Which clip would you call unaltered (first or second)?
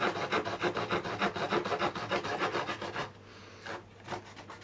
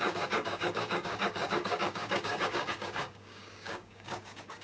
first